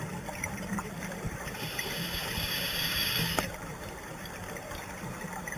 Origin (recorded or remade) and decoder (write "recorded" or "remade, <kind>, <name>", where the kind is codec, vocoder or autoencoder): remade, vocoder, BigVGAN v2